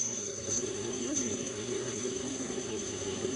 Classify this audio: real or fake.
fake